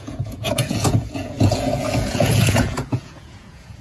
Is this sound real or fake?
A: fake